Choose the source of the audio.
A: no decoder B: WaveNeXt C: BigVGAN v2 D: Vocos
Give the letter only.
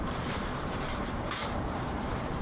C